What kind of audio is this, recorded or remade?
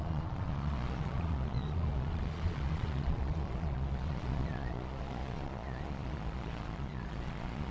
remade